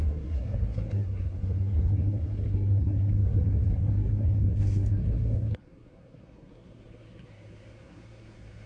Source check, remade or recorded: remade